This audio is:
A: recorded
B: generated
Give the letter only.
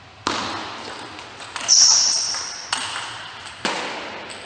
A